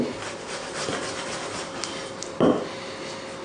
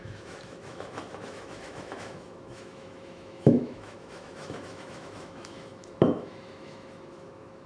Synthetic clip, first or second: second